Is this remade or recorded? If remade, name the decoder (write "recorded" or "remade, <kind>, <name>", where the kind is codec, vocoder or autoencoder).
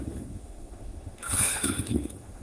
remade, autoencoder, DAC-VAE